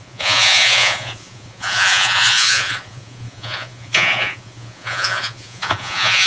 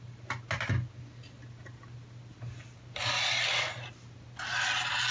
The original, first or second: second